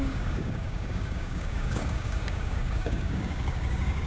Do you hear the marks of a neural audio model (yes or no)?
yes